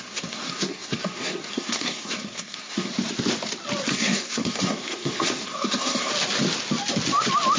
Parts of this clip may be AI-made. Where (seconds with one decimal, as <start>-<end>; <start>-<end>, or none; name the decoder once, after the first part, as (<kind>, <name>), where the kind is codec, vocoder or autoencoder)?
0.0-2.9 (codec, SNAC); 3.9-6.1

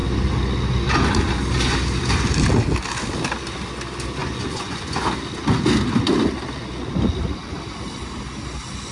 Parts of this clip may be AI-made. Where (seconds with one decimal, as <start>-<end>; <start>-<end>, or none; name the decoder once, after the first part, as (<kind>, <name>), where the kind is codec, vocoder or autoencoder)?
4.2-5.0 (vocoder, Vocos)

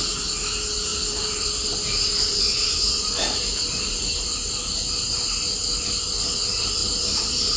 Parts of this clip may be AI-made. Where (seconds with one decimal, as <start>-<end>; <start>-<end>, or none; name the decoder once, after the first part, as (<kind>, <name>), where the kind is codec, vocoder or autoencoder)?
0.9-4.6 (vocoder, BigVGAN v2); 6.8-7.6